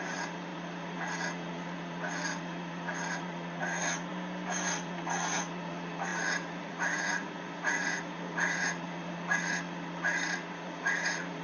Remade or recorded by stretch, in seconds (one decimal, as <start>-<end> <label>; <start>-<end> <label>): 0.0-4.1 remade; 4.1-4.7 recorded; 4.7-11.4 remade